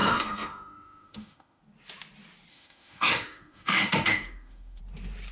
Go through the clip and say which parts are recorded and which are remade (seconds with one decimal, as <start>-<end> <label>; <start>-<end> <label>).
0.0-1.6 remade; 1.6-2.5 recorded; 2.5-4.8 remade; 4.8-5.3 recorded